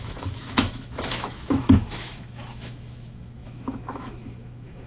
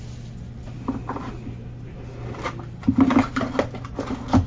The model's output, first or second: first